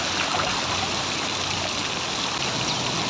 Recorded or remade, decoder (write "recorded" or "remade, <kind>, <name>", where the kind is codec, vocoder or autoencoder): recorded